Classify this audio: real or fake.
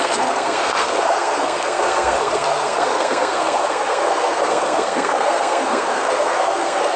fake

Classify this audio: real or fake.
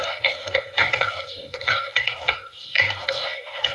fake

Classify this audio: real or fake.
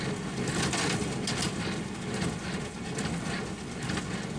real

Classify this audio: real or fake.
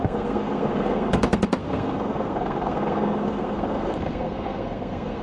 fake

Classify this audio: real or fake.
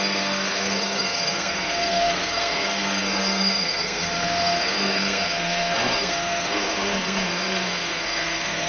fake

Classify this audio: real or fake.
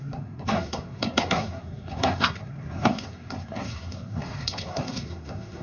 fake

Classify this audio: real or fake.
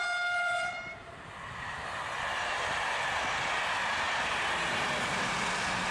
real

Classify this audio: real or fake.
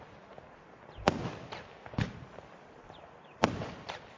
real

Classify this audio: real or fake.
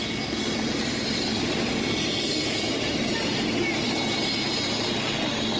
real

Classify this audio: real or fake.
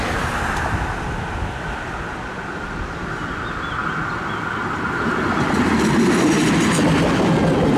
real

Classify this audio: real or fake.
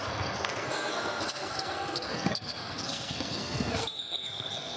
fake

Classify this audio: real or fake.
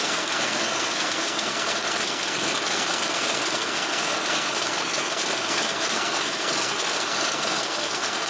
fake